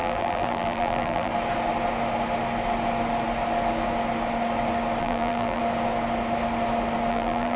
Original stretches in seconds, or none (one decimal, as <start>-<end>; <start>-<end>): 1.3-5.0; 5.6-7.1